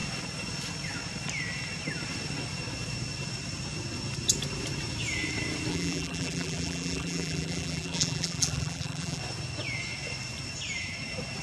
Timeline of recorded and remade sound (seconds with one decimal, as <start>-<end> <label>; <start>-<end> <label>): 0.0-5.7 recorded; 5.7-9.2 remade; 9.2-11.4 recorded